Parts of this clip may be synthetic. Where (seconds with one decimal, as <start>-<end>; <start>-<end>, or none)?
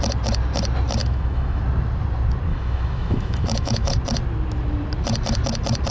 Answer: 1.0-1.6; 2.5-3.9